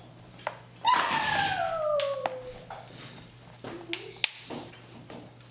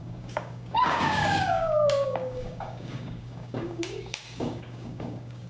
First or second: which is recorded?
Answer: first